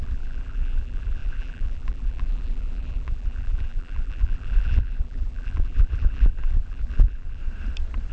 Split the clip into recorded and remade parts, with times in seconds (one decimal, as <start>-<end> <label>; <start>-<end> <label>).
0.0-7.4 remade; 7.4-8.1 recorded